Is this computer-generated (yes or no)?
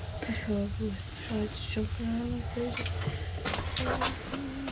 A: no